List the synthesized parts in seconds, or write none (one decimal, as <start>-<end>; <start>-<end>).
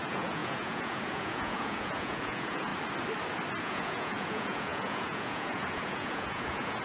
0.0-2.7; 3.6-6.8